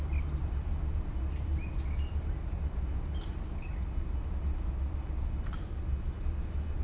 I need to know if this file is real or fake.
real